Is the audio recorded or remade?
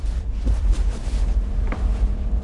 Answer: remade